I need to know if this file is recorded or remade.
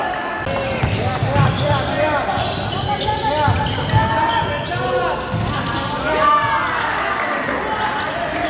recorded